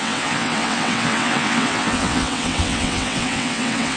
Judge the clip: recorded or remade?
remade